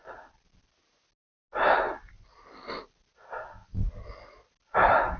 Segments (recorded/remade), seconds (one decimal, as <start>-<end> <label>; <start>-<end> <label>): 0.0-5.2 recorded